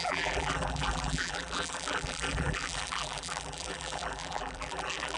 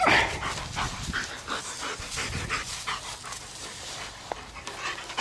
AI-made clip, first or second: first